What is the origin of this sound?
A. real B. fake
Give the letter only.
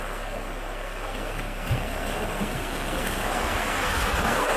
B